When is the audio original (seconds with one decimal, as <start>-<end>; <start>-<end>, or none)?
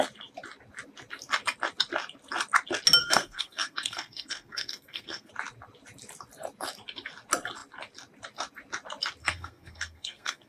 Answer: 0.0-3.0; 5.3-9.2